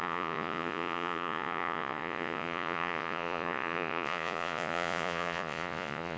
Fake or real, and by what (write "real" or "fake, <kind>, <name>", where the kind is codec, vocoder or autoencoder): fake, vocoder, Vocos